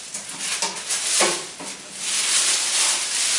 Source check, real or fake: real